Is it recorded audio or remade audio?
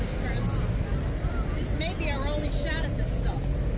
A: recorded